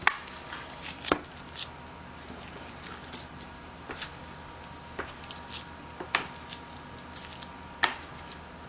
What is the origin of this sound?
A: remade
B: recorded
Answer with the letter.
B